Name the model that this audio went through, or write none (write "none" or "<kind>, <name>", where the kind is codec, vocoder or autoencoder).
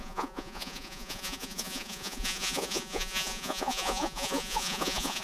vocoder, Vocos